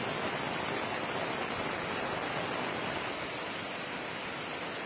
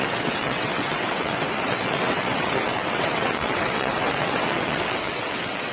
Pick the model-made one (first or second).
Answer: second